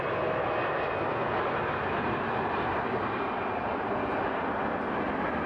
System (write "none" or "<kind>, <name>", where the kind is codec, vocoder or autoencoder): none